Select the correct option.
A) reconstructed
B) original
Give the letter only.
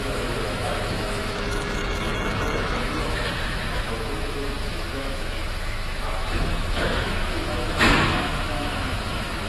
A